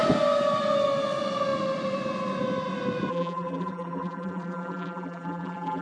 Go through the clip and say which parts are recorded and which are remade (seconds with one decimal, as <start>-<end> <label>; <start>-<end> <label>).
0.0-3.1 recorded; 3.1-5.8 remade